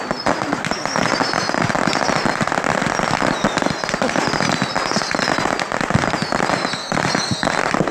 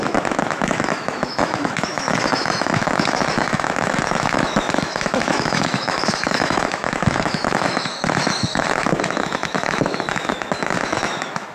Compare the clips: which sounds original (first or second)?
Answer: first